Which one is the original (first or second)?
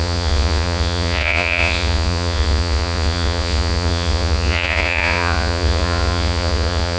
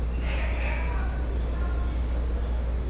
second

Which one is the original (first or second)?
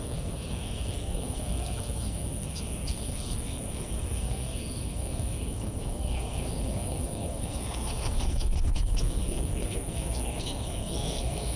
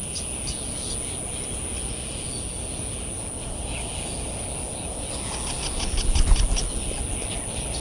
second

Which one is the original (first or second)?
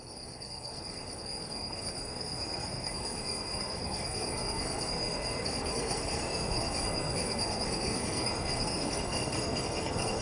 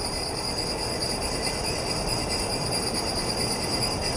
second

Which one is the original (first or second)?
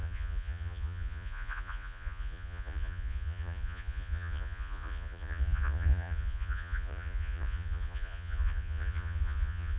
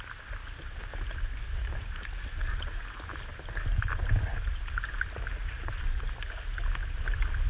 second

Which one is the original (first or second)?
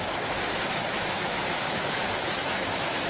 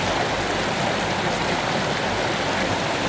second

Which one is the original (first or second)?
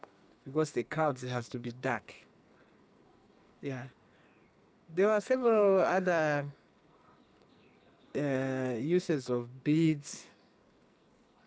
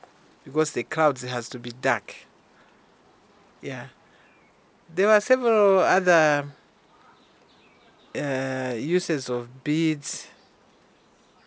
second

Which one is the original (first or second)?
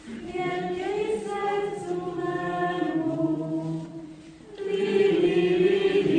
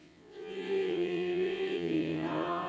first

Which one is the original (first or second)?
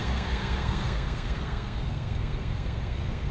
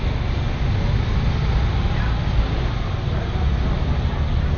second